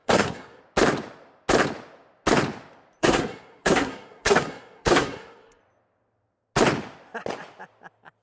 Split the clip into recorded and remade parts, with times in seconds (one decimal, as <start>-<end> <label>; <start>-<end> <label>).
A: 0.0-0.6 remade; 0.6-3.0 recorded; 3.0-5.6 remade; 5.6-8.2 recorded